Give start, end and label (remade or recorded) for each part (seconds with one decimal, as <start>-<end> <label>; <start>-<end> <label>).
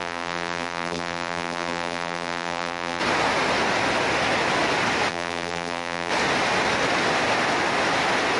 0.0-3.0 remade; 3.0-5.1 recorded; 5.1-6.1 remade; 6.1-8.4 recorded